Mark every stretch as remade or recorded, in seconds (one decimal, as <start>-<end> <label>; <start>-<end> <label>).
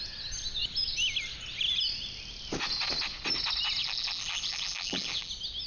0.0-3.8 recorded; 3.8-5.3 remade; 5.3-5.7 recorded